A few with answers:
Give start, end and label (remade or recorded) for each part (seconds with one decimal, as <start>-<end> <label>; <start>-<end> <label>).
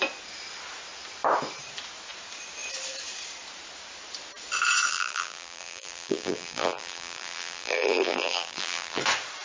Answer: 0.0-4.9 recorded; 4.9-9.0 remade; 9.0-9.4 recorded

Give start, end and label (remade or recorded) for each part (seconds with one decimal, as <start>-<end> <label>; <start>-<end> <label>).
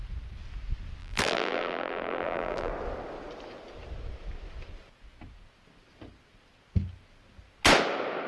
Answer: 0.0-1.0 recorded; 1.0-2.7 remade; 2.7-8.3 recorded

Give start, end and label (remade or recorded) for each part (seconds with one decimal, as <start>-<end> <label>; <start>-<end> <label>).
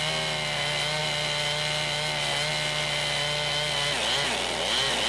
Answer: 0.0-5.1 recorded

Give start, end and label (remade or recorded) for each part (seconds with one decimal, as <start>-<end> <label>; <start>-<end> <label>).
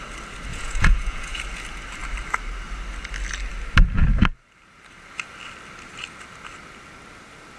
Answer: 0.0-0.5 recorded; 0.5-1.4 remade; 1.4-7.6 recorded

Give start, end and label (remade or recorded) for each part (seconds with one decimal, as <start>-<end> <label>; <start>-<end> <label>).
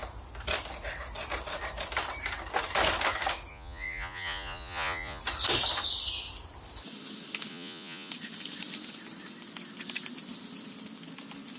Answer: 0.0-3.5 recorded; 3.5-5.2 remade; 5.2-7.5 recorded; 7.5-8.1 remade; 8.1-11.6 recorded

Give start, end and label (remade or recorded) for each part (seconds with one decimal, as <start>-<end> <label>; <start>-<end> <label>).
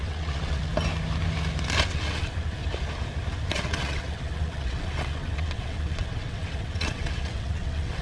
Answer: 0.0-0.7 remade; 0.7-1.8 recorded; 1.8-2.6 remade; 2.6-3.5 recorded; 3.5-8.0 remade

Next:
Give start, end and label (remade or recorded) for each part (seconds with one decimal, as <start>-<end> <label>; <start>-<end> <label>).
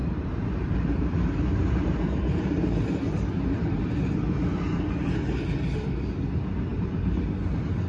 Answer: 0.0-3.3 remade; 3.3-6.7 recorded; 6.7-7.2 remade; 7.2-7.9 recorded